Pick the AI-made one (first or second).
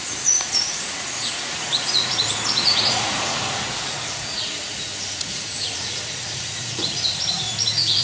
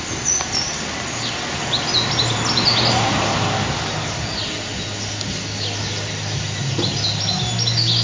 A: first